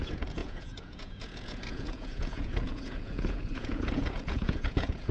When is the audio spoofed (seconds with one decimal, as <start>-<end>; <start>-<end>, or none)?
0.0-5.1